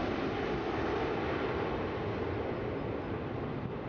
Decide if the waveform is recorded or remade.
recorded